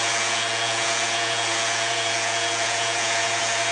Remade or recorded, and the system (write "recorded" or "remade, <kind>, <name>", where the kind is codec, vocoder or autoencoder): remade, vocoder, Vocos